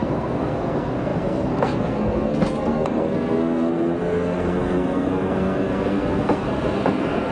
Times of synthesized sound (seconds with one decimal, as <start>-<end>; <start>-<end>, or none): 0.0-7.3